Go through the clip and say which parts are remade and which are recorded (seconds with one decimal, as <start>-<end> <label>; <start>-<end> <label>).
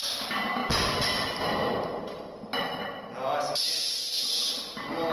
0.0-5.1 recorded